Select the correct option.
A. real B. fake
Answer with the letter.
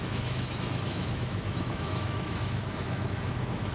B